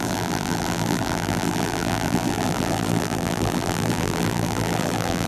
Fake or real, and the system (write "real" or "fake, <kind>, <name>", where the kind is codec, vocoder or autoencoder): fake, vocoder, BigVGAN v2